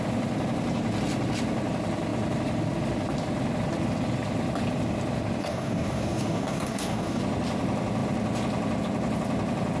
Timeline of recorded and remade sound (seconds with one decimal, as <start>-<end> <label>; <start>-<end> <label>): 0.0-5.4 recorded; 5.4-7.2 remade; 7.2-9.8 recorded